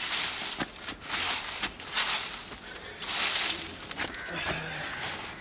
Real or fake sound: real